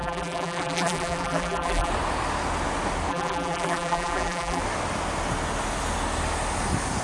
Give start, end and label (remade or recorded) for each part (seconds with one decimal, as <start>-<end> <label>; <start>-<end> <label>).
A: 0.0-1.9 remade; 1.9-3.1 recorded; 3.1-4.6 remade; 4.6-7.0 recorded